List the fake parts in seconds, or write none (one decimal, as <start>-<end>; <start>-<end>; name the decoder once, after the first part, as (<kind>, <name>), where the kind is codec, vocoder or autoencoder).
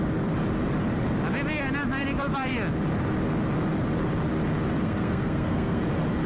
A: 4.8-5.8 (codec, SNAC)